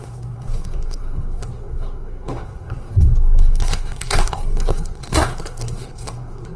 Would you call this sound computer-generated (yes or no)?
yes